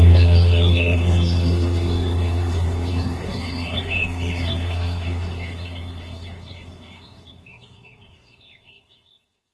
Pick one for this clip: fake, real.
fake